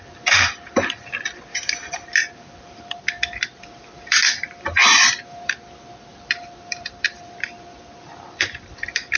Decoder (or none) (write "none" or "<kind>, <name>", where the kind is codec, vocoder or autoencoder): vocoder, BigVGAN v2